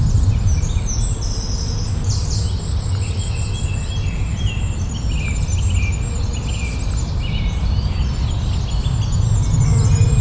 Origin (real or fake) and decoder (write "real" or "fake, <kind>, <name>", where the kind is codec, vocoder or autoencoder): real